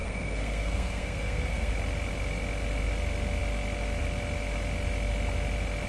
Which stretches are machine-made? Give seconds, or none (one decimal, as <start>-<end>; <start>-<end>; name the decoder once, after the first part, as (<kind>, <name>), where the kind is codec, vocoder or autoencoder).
0.0-1.7 (codec, SNAC)